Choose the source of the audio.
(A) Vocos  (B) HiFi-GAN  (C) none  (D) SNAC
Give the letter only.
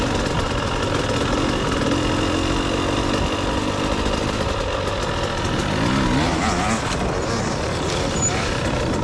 C